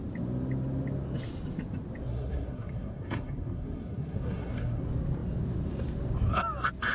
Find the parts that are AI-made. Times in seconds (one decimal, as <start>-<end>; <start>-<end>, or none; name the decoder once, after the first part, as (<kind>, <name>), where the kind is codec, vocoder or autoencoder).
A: 2.1-4.8 (codec, SNAC)

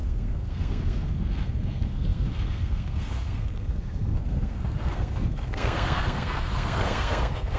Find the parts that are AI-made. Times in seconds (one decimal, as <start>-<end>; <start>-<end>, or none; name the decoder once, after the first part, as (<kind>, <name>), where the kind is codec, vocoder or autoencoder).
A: 0.0-7.6 (codec, SNAC)

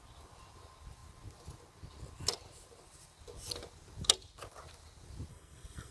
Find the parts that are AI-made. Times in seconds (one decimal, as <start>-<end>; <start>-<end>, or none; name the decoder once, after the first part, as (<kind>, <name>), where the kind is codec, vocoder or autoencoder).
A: 5.3-5.9 (codec, SNAC)

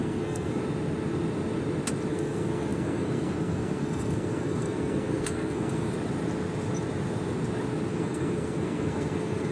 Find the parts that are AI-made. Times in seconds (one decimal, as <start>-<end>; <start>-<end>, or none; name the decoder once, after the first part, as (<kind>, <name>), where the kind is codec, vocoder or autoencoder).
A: 0.0-0.6 (codec, SNAC); 2.1-5.9; 7.9-9.5